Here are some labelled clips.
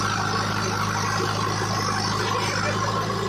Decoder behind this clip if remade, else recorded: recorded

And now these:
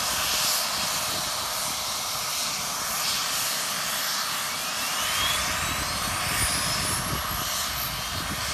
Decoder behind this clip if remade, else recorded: recorded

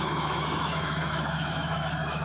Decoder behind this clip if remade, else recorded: remade, autoencoder, DAC-VAE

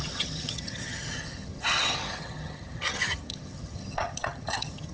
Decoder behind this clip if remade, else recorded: remade, vocoder, HiFi-GAN